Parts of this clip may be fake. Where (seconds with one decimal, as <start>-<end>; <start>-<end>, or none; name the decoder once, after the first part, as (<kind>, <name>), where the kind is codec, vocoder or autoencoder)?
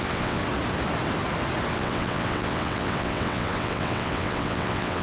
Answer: 0.0-0.4 (vocoder, WaveNeXt); 1.7-5.0